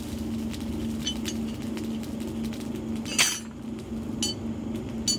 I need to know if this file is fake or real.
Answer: real